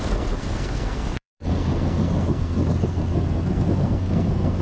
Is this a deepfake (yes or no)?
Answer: yes